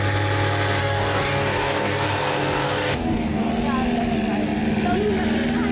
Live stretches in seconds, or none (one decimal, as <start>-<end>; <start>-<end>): 0.0-0.8; 3.5-5.7